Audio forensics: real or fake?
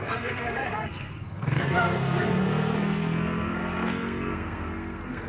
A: fake